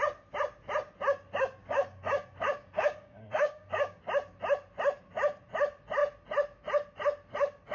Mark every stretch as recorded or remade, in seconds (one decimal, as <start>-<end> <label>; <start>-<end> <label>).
0.0-1.6 recorded; 1.6-4.0 remade; 4.0-7.7 recorded